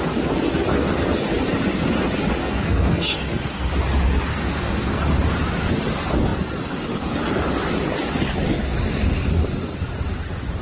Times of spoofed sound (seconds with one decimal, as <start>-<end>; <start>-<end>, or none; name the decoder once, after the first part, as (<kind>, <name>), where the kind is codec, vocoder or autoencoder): 2.4-3.7 (codec, SNAC); 4.3-5.0